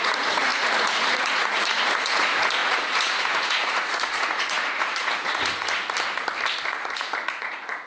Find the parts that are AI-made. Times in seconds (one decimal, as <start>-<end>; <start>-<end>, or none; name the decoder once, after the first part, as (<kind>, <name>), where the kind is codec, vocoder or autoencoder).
0.0-5.8 (vocoder, Vocos); 6.7-7.9